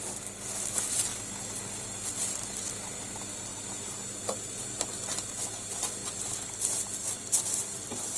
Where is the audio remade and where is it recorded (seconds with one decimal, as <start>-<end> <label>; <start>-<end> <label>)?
0.0-8.2 recorded